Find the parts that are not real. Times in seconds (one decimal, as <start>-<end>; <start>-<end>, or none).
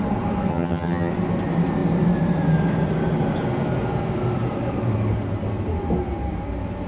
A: 0.5-1.1